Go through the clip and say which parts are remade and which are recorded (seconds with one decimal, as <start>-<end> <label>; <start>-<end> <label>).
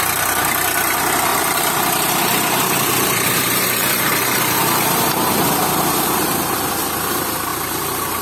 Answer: 0.0-1.3 recorded; 1.3-5.5 remade; 5.5-8.2 recorded